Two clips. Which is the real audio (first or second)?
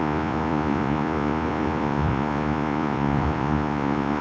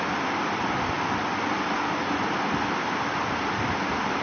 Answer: second